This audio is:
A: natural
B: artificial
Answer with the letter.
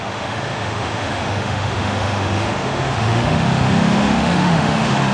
B